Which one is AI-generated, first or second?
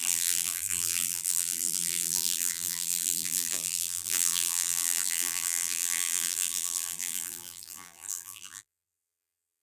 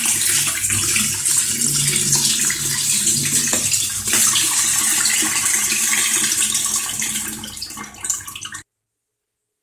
first